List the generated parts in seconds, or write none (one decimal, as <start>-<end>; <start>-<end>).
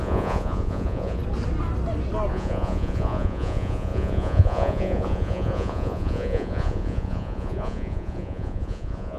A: 0.0-1.2; 2.3-9.2